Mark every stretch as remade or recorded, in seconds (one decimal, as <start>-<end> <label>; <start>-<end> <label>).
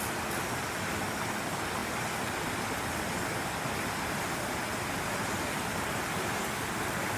0.0-7.2 recorded